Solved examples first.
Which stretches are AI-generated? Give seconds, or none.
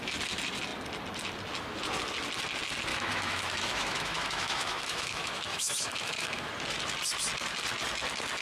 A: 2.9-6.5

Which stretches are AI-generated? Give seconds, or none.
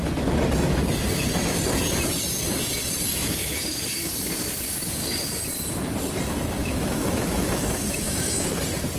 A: 3.1-3.8; 6.6-8.6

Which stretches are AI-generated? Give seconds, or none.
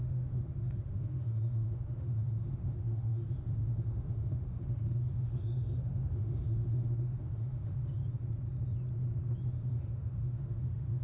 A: 0.0-8.0; 9.6-11.0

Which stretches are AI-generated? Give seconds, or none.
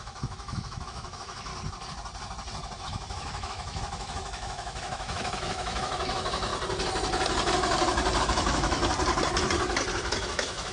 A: 0.0-1.5; 2.8-6.5; 8.2-8.8; 10.2-10.7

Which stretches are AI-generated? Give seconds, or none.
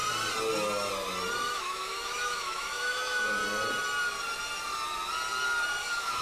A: 1.5-3.4; 5.8-6.2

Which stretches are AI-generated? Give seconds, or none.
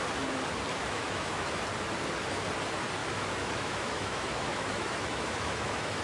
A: 0.7-1.6; 3.0-6.0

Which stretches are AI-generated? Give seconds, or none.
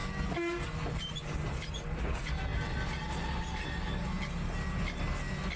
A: none